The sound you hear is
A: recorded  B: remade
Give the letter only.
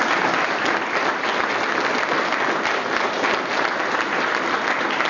A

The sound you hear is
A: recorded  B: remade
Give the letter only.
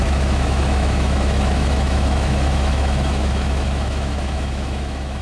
B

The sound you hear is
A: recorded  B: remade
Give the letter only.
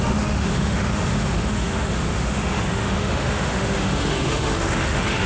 B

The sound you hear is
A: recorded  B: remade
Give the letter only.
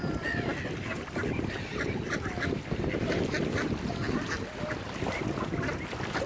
A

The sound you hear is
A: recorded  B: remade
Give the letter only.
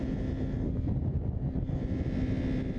A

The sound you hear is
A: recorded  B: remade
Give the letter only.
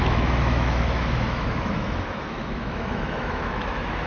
B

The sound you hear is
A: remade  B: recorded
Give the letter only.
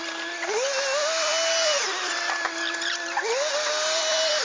B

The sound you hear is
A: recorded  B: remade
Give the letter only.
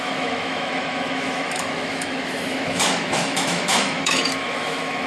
B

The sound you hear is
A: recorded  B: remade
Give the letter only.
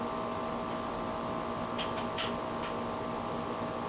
A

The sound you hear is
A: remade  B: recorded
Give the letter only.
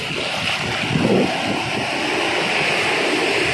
B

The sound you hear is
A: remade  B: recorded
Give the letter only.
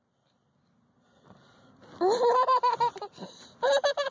B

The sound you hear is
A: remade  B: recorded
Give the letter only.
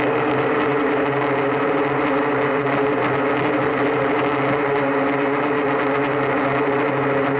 B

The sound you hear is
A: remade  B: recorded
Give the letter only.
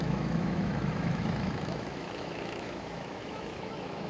A